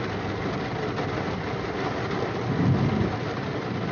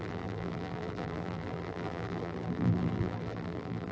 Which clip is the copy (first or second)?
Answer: second